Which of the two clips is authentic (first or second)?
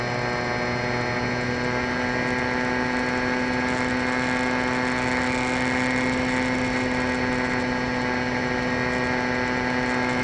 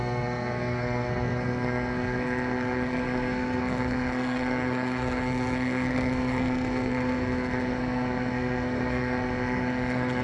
first